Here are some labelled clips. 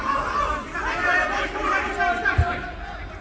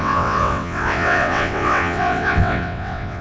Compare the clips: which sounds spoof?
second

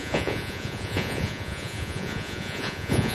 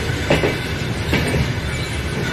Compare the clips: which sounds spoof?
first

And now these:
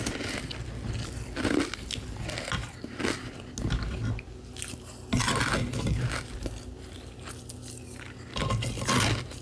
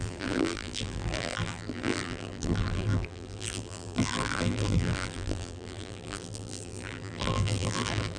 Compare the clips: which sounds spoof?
second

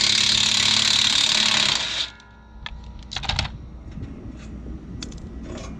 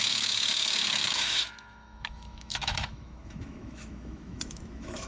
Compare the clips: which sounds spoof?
second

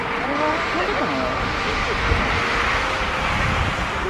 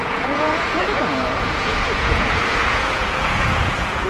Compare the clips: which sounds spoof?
second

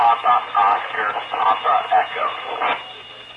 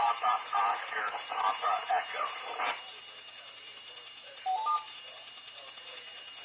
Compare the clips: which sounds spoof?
second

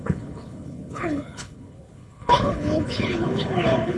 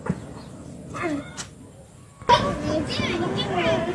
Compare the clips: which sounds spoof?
first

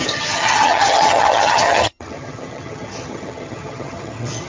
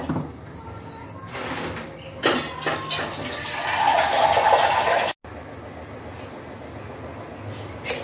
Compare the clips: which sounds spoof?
first